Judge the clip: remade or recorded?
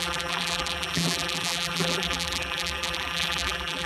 remade